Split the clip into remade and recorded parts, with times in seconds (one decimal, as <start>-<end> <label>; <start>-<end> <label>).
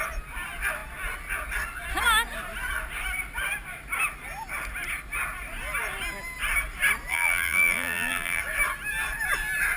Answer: 0.0-7.1 recorded; 7.1-8.4 remade; 8.4-9.8 recorded